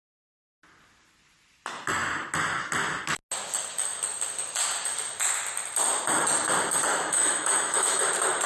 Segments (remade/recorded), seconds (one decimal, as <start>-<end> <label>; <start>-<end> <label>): 0.0-6.9 recorded; 6.9-8.0 remade; 8.0-8.5 recorded